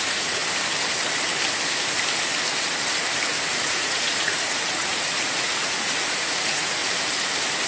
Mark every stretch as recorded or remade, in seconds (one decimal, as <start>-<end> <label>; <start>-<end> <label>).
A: 0.0-0.4 remade; 0.4-3.5 recorded; 3.5-6.8 remade; 6.8-7.7 recorded